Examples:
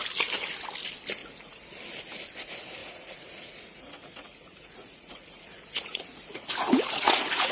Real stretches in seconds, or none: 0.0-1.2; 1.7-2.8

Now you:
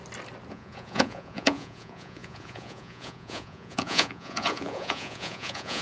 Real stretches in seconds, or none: 0.0-0.5

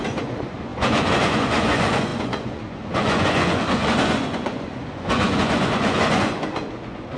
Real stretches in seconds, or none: none

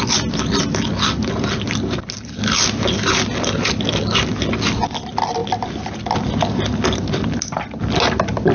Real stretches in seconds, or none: 0.0-8.5

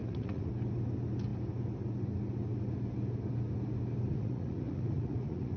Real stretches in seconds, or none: 0.5-4.1

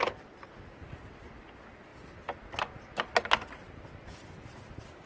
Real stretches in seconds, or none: 0.0-5.1